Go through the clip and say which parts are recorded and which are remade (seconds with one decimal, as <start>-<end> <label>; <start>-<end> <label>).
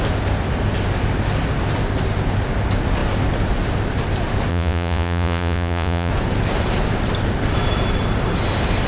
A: 0.0-4.5 recorded; 4.5-6.1 remade; 6.1-8.9 recorded